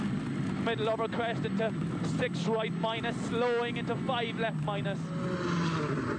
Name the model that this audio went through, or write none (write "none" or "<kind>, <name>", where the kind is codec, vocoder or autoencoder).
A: none